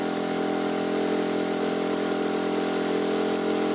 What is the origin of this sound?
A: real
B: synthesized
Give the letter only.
A